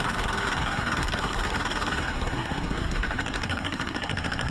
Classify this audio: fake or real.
fake